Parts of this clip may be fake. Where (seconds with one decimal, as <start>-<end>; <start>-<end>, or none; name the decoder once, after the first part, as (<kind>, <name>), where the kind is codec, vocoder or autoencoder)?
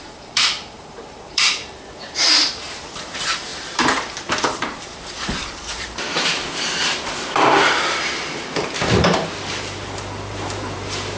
0.0-11.2 (vocoder, BigVGAN v2)